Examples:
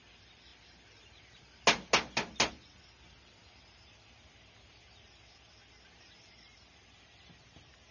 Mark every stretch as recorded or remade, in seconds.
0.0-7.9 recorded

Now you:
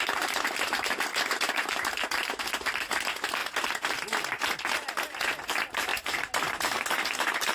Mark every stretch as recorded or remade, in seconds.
0.0-1.1 recorded; 1.1-2.4 remade; 2.4-5.9 recorded; 5.9-6.8 remade; 6.8-7.5 recorded